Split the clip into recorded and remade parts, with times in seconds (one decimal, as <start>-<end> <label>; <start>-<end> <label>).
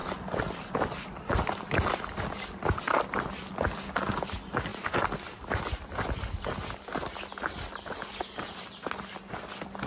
0.0-9.9 recorded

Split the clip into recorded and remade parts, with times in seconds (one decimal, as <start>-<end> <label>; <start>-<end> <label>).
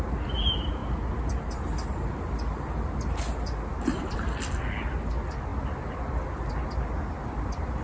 0.0-7.8 recorded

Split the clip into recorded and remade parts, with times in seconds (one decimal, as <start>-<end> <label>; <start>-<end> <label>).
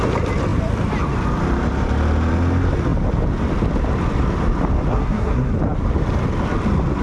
0.0-4.9 recorded; 4.9-5.5 remade; 5.5-7.0 recorded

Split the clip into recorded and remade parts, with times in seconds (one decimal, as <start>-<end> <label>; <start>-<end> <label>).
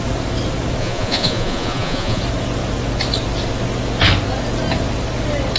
0.0-0.8 recorded; 0.8-2.2 remade; 2.2-5.6 recorded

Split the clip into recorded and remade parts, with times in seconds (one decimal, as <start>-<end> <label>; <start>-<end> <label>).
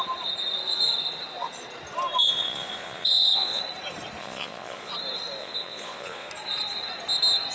0.0-2.2 recorded; 2.2-3.6 remade; 3.6-4.2 recorded; 4.2-4.9 remade; 4.9-5.4 recorded; 5.4-6.3 remade; 6.3-7.5 recorded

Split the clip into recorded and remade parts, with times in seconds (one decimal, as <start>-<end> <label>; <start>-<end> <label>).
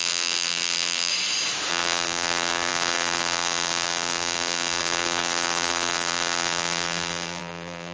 0.0-1.1 remade; 1.1-1.7 recorded; 1.7-7.9 remade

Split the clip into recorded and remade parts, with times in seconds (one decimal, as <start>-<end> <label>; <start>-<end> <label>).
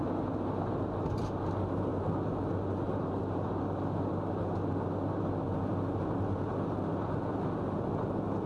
0.0-8.5 recorded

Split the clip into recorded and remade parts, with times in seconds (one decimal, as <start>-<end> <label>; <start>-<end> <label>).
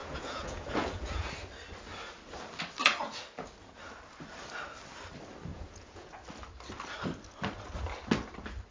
0.0-1.3 remade; 1.3-5.5 recorded; 5.5-6.1 remade; 6.1-8.7 recorded